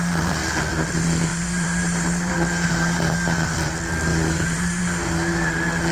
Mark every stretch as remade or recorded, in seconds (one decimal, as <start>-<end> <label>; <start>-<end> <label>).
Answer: 0.0-1.3 recorded; 1.3-2.7 remade; 2.7-4.1 recorded; 4.1-4.8 remade; 4.8-5.9 recorded